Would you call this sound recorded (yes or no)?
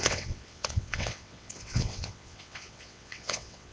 no